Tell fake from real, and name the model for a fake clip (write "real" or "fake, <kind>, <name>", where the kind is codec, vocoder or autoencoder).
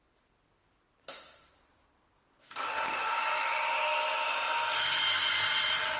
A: real